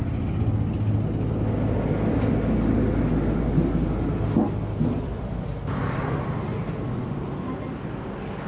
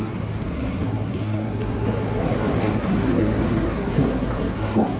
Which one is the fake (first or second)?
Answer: second